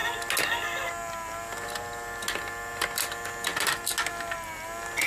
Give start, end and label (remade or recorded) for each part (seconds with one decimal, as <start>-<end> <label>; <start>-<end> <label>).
0.0-5.1 recorded